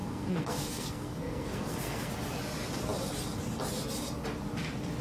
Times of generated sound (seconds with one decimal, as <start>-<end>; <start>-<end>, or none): 0.0-2.1